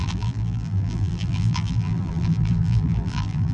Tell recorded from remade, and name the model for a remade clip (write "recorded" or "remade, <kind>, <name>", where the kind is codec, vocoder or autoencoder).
remade, vocoder, BigVGAN v2